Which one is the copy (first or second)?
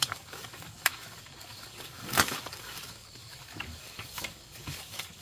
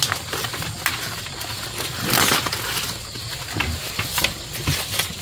first